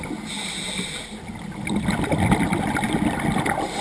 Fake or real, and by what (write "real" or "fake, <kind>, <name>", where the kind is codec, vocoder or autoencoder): real